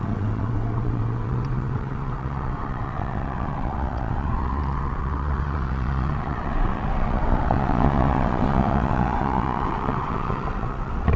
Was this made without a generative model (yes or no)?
no